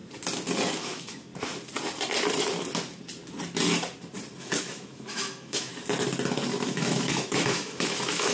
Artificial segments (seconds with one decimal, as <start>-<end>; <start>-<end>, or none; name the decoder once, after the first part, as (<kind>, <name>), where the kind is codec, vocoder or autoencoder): 0.8-1.3 (autoencoder, DAC-VAE); 4.4-5.7; 6.7-8.3